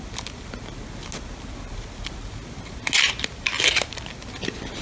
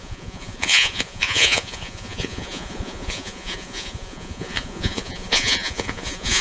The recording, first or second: first